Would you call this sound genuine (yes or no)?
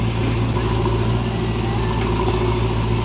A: yes